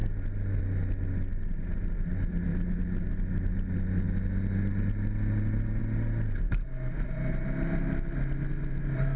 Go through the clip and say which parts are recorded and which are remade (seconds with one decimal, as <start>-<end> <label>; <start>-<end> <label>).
0.0-2.5 recorded; 2.5-3.1 remade; 3.1-9.2 recorded